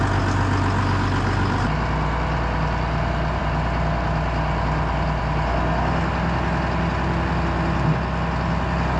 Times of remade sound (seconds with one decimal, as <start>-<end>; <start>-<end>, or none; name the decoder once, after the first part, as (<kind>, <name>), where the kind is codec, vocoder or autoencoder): none